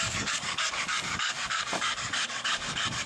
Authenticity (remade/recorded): remade